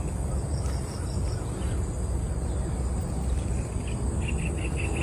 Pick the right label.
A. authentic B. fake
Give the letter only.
A